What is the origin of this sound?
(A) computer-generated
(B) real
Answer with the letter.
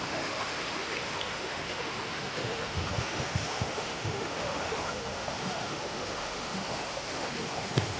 A